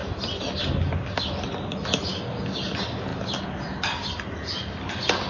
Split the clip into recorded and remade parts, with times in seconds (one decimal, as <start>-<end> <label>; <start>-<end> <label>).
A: 0.0-2.1 recorded; 2.1-2.6 remade; 2.6-5.3 recorded

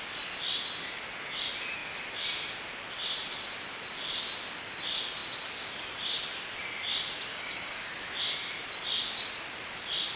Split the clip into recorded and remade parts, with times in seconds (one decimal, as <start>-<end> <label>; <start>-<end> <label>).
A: 0.0-7.3 recorded; 7.3-7.9 remade; 7.9-10.2 recorded